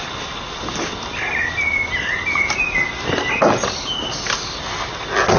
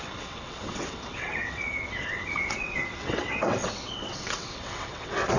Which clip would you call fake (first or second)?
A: second